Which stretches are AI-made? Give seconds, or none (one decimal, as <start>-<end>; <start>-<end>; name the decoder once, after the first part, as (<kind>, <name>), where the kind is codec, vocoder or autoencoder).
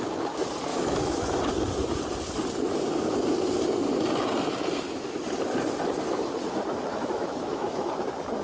0.7-1.5 (autoencoder, DAC-VAE); 6.9-8.0